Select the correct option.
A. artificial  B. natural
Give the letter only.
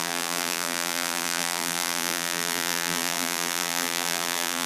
A